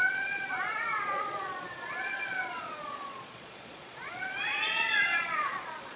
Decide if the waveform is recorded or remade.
remade